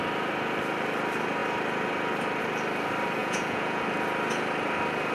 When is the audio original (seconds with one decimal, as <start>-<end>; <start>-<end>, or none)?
0.0-3.2; 3.8-5.1